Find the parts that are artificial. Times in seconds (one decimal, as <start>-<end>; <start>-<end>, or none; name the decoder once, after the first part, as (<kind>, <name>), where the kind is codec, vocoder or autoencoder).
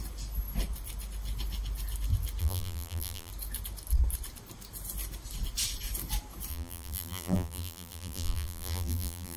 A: 2.4-3.3 (vocoder, BigVGAN v2); 6.5-9.4